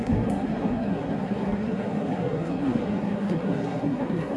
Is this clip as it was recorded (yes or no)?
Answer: no